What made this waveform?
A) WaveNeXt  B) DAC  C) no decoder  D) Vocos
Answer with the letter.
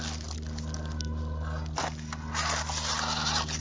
C